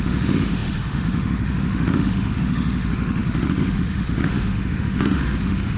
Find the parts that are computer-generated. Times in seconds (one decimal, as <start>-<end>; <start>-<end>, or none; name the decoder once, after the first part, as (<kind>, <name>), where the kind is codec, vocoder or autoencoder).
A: 0.0-5.8 (autoencoder, DAC-VAE)